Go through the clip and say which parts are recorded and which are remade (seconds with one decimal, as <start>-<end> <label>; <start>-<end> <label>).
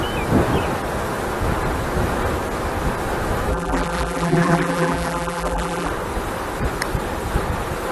0.0-3.5 recorded; 3.5-5.9 remade; 5.9-7.9 recorded